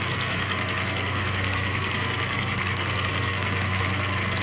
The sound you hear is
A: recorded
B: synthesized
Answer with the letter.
B